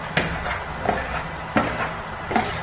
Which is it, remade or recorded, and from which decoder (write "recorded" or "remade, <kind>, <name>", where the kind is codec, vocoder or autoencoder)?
recorded